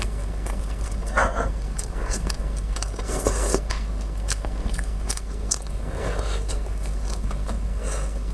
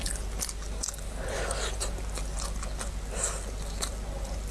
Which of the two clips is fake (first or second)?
first